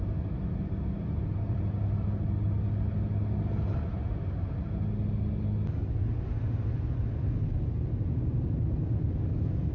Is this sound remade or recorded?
recorded